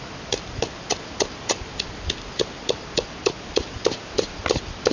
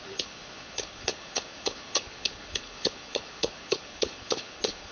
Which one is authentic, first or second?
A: first